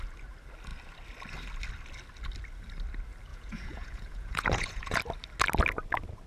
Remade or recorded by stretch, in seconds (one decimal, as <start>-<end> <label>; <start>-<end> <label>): 0.0-3.3 recorded; 3.3-5.0 remade; 5.0-6.3 recorded